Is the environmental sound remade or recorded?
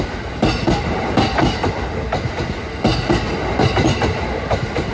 recorded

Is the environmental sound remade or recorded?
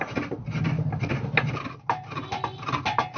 recorded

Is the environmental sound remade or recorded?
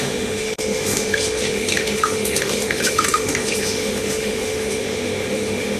remade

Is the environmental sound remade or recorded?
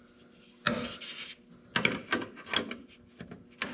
recorded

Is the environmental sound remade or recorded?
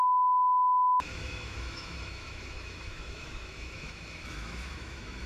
remade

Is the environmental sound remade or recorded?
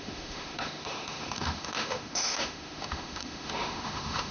remade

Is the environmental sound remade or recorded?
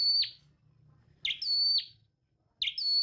recorded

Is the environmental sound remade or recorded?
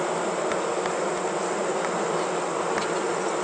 recorded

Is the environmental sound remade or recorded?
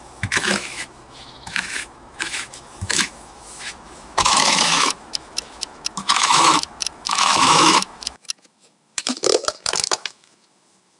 remade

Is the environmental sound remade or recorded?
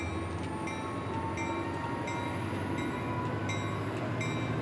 recorded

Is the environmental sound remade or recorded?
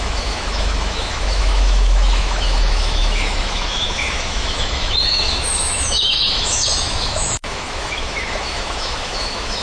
remade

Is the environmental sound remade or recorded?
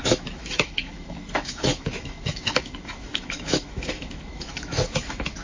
remade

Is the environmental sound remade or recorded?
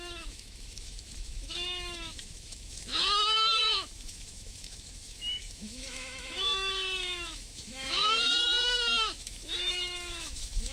remade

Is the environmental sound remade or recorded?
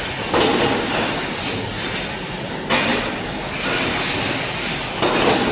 recorded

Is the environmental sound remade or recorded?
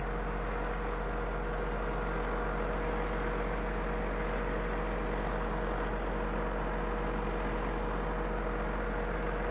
recorded